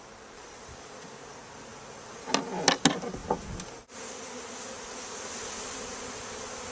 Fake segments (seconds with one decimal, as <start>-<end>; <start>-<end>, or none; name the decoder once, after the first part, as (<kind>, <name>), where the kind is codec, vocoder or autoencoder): none